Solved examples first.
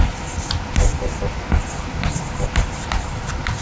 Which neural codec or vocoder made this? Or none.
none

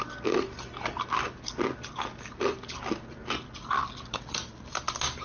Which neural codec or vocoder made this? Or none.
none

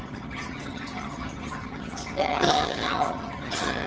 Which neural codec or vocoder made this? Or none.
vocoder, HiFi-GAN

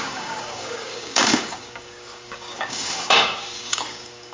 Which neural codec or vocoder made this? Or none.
codec, DAC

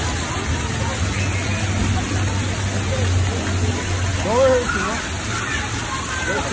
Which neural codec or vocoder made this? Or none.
none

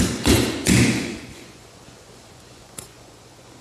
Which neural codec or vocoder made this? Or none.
vocoder, Vocos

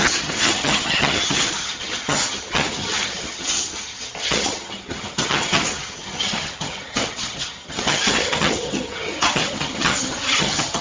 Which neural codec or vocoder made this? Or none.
vocoder, HiFi-GAN